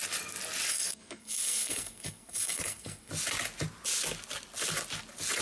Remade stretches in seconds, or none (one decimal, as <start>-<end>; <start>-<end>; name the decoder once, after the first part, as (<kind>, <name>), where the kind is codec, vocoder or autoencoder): 0.7-3.1 (codec, SNAC)